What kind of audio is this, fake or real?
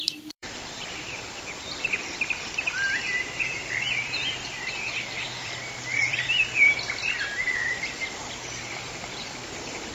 fake